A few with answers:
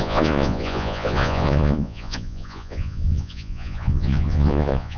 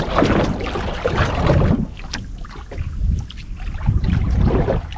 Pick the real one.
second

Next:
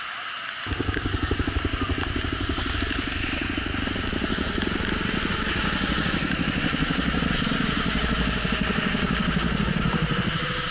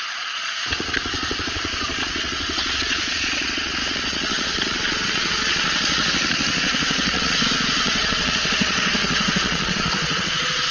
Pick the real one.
first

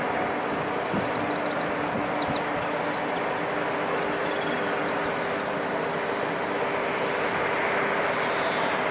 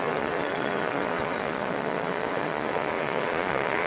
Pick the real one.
first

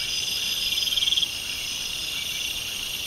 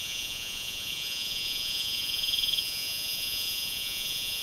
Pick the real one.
first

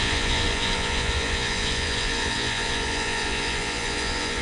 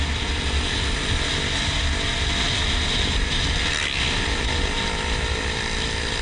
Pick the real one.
second